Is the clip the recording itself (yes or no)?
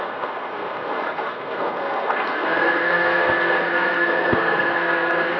no